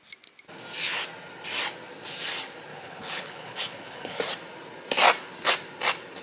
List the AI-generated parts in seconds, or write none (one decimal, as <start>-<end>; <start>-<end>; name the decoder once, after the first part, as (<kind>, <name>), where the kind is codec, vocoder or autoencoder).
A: 2.7-4.2 (codec, HILCodec)